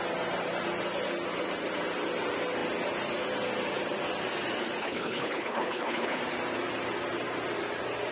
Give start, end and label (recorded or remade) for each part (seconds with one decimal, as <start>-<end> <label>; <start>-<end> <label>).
0.0-4.8 recorded; 4.8-6.2 remade; 6.2-8.1 recorded